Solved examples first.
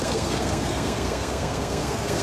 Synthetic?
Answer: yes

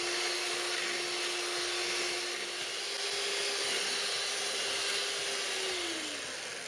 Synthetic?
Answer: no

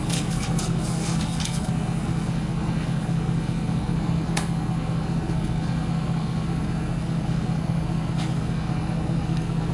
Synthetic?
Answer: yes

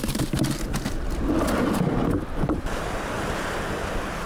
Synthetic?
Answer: no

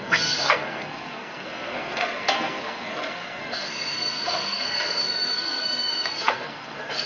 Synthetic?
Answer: yes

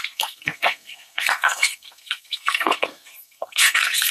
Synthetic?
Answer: yes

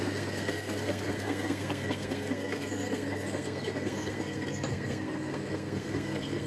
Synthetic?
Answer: yes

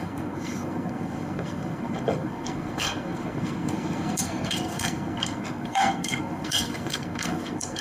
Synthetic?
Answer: yes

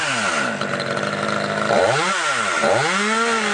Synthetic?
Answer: no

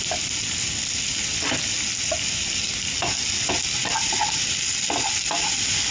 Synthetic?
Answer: no